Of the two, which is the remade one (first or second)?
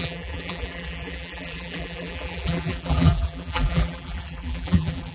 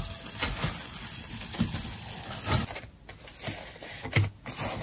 first